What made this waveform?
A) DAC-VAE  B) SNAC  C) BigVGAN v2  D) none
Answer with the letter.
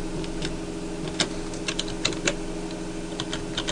D